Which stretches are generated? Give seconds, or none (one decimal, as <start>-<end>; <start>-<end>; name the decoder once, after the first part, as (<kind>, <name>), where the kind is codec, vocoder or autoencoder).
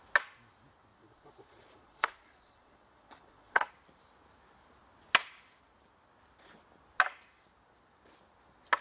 0.9-3.7 (vocoder, Vocos)